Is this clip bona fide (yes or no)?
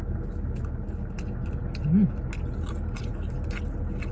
yes